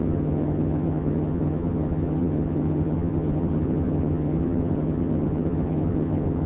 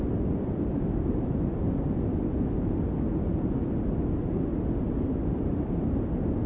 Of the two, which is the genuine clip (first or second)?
second